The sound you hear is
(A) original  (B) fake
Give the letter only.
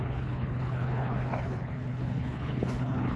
B